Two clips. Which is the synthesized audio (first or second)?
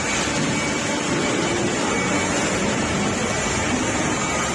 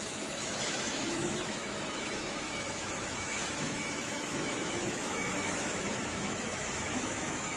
second